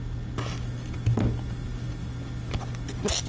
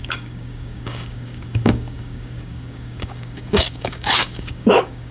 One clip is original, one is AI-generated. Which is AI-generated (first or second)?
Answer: second